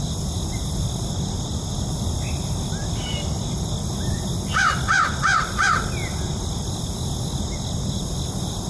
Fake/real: real